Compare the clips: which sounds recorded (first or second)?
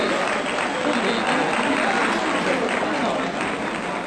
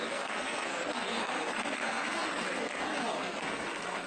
first